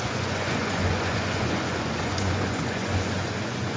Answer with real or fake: fake